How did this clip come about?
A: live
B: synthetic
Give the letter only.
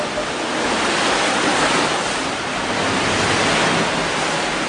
A